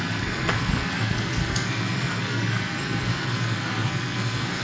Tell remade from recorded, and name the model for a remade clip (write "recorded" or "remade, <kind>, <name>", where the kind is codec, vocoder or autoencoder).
remade, codec, SNAC